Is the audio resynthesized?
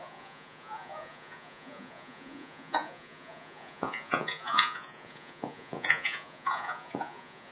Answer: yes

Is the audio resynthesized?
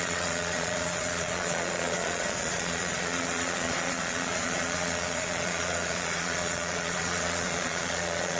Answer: yes